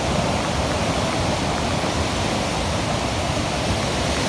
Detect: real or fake real